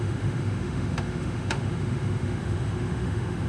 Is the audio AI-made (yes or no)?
yes